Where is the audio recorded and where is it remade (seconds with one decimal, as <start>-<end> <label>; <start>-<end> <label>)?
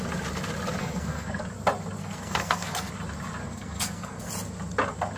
0.0-0.8 recorded; 0.8-1.4 remade; 1.4-2.0 recorded; 2.0-2.9 remade; 2.9-3.4 recorded; 3.4-4.3 remade; 4.3-5.2 recorded